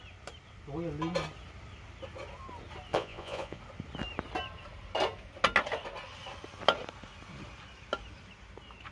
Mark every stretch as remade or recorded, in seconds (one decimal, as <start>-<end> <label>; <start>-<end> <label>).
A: 0.0-2.9 recorded; 2.9-3.6 remade; 3.6-8.9 recorded